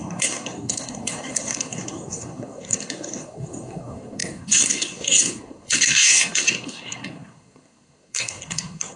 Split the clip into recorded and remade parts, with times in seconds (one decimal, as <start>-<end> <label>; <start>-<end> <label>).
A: 0.0-9.0 remade